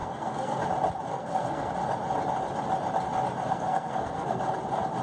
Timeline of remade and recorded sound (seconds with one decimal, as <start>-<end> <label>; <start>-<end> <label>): 0.0-0.6 remade; 0.6-1.1 recorded; 1.1-1.7 remade; 1.7-3.5 recorded; 3.5-4.4 remade; 4.4-5.0 recorded